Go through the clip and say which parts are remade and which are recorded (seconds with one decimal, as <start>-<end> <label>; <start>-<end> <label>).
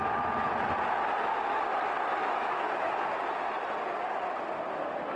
0.0-2.2 recorded; 2.2-2.9 remade; 2.9-5.2 recorded